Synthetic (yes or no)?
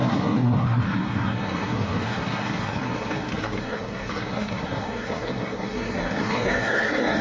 yes